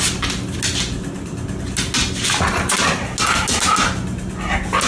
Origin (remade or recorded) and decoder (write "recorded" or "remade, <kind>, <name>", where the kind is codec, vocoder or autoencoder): recorded